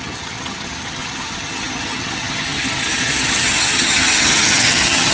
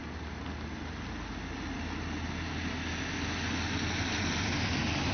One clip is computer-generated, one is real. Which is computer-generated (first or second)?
first